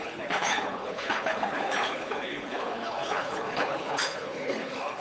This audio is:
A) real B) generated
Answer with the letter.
B